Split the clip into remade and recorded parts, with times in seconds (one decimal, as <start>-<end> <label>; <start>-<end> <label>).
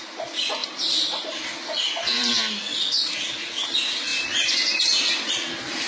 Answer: 0.0-0.6 recorded; 0.6-1.2 remade; 1.2-2.1 recorded; 2.1-2.6 remade; 2.6-4.1 recorded; 4.1-5.3 remade; 5.3-5.9 recorded